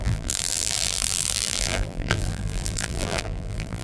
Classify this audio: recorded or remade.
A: remade